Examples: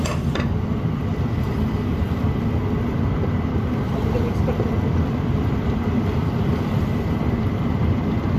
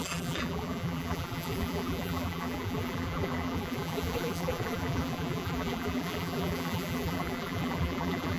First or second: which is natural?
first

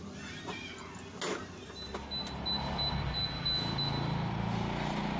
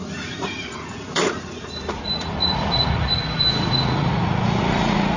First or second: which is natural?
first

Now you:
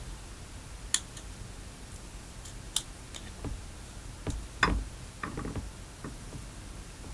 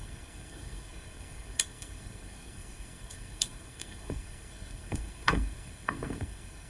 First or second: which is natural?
first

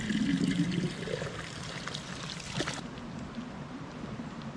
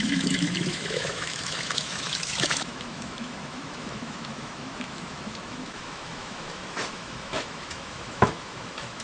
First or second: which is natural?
first